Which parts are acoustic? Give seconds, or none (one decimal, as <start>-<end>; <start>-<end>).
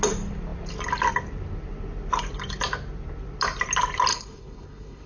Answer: 0.0-4.1